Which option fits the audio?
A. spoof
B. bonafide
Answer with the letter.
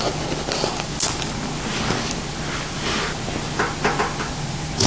B